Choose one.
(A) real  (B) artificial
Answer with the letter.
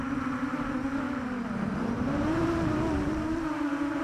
B